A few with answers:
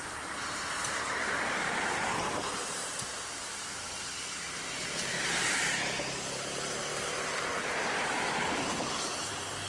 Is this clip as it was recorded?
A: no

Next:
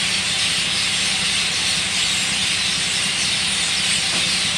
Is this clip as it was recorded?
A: yes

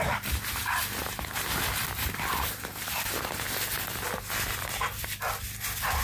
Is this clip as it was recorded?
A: yes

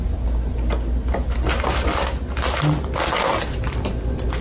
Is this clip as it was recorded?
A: yes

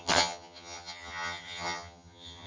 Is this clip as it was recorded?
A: no